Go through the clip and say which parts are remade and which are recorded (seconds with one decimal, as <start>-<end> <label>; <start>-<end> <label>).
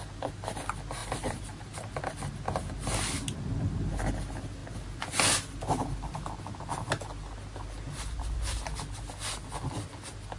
0.0-1.0 recorded; 1.0-2.0 remade; 2.0-10.4 recorded